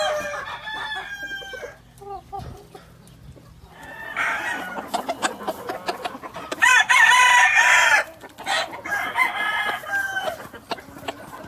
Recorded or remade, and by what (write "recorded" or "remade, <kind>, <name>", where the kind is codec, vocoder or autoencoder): recorded